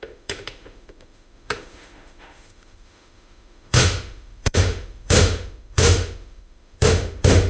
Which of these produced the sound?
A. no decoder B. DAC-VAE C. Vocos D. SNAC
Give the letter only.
B